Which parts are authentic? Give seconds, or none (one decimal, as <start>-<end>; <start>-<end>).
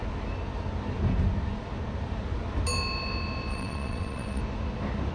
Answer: 0.0-3.5; 4.4-5.1